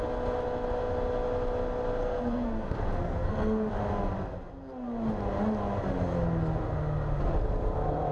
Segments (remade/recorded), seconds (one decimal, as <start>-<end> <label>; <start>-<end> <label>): 0.0-2.0 recorded; 2.0-3.7 remade; 3.7-8.1 recorded